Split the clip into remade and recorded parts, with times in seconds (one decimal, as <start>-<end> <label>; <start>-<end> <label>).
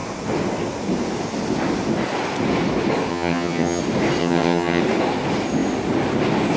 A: 0.0-3.1 recorded; 3.1-3.8 remade; 3.8-4.2 recorded; 4.2-4.8 remade; 4.8-6.6 recorded